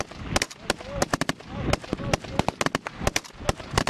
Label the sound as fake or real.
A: real